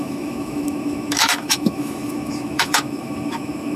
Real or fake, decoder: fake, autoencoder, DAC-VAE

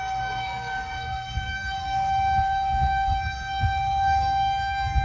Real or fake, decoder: fake, codec, SNAC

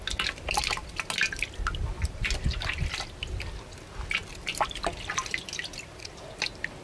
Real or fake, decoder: real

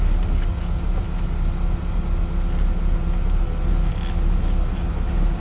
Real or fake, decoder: real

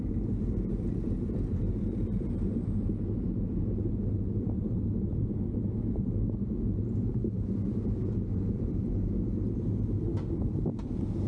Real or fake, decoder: real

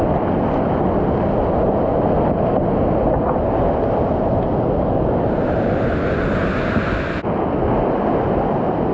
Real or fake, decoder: real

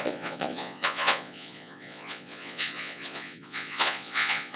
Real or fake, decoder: fake, vocoder, Vocos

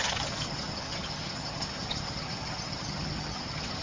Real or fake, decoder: fake, vocoder, HiFi-GAN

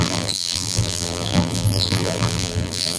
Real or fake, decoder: fake, vocoder, BigVGAN v2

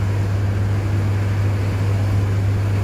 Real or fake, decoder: real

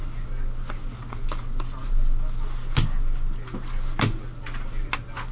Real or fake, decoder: real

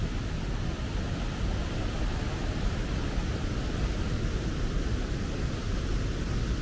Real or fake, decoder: real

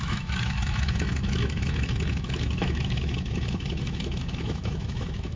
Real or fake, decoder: fake, autoencoder, DAC-VAE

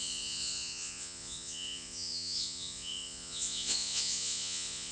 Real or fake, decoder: fake, vocoder, Vocos